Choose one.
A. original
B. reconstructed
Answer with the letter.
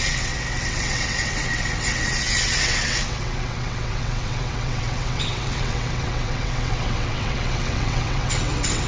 B